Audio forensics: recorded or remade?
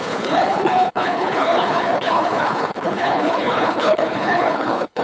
remade